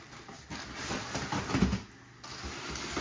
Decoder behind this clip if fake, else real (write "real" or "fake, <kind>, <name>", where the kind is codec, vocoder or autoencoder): real